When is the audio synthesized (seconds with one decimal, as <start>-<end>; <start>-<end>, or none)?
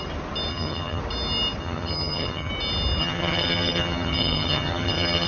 0.5-1.0; 1.6-2.5; 3.0-5.3